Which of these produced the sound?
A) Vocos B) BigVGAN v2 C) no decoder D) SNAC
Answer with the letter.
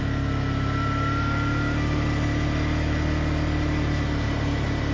C